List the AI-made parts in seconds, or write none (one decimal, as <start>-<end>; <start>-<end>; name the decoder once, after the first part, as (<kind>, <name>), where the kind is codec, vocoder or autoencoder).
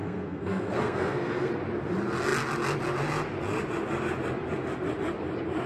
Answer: 0.0-1.5 (codec, SNAC)